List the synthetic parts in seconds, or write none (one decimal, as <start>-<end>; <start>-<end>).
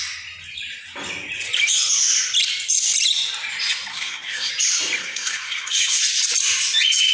3.9-4.5; 5.0-6.0